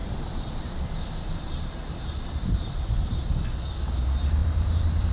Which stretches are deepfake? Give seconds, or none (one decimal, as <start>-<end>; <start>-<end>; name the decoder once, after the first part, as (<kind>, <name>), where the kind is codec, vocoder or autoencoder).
0.0-3.1 (vocoder, BigVGAN v2); 4.4-5.1